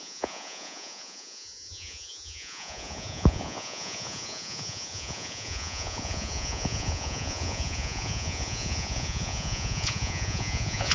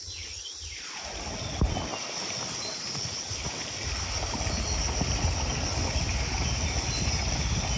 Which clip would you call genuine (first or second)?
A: second